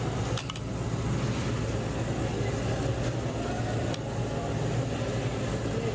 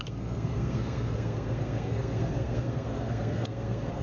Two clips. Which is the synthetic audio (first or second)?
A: second